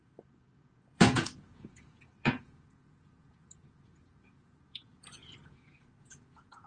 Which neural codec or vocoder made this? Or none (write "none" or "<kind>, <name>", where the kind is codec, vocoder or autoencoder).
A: vocoder, Vocos